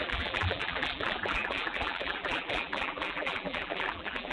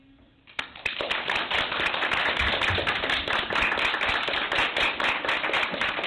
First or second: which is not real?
first